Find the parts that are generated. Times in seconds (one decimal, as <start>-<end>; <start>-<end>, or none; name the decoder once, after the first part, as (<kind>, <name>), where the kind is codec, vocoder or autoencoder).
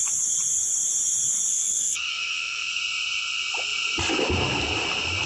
1.5-2.7 (codec, SNAC)